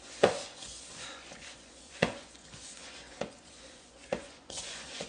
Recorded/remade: remade